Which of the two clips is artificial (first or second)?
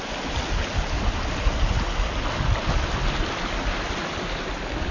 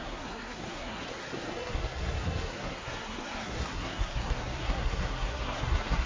second